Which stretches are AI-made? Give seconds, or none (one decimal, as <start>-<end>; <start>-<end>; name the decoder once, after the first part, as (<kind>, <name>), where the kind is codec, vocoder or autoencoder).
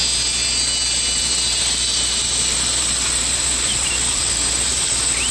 3.2-5.3 (vocoder, BigVGAN v2)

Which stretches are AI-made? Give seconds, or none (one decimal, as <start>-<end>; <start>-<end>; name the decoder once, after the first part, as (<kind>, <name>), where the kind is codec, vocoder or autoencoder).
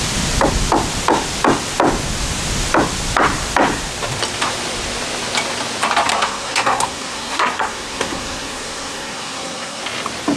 6.1-9.8 (codec, SNAC)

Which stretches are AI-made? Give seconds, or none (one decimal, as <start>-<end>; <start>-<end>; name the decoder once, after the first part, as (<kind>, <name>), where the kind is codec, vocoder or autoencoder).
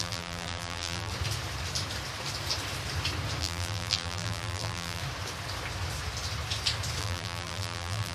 0.0-1.1 (vocoder, BigVGAN v2); 3.4-5.0; 7.0-8.1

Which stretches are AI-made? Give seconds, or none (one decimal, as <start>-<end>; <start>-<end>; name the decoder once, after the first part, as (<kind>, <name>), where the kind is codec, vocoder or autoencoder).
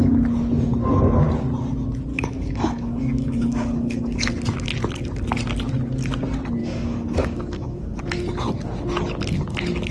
2.1-4.3 (codec, DAC); 6.6-8.0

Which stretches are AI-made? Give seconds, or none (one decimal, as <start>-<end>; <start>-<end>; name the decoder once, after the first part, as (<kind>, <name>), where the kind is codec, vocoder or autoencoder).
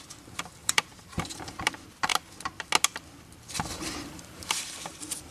0.6-1.6 (vocoder, BigVGAN v2); 3.7-4.5